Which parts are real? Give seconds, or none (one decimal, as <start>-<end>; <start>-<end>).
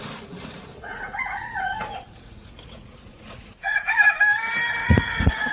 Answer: 0.0-0.9; 4.2-4.8